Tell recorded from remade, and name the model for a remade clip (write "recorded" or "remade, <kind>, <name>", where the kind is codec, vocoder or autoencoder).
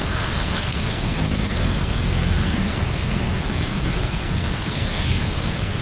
remade, codec, SNAC